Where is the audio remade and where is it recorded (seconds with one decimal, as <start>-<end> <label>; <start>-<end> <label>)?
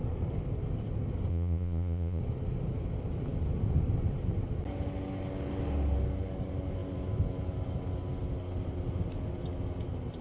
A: 0.0-1.3 recorded; 1.3-2.2 remade; 2.2-10.2 recorded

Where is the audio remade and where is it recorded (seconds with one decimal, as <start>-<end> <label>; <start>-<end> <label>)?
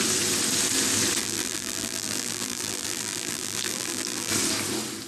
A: 0.0-1.2 recorded; 1.2-4.3 remade; 4.3-5.1 recorded